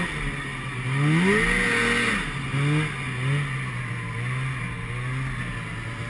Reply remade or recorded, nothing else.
recorded